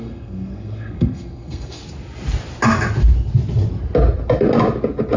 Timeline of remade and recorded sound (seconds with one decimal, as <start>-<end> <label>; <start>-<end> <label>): 0.0-1.8 remade; 1.8-5.2 recorded